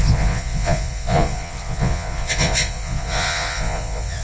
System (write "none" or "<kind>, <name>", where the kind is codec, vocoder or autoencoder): vocoder, Vocos